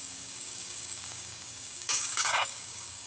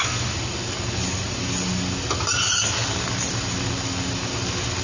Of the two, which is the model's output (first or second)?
first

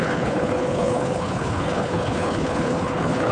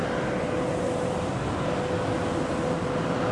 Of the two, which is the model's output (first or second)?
first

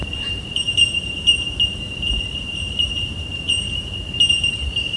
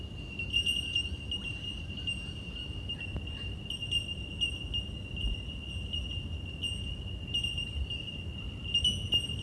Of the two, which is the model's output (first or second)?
first